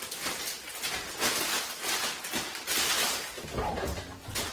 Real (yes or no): yes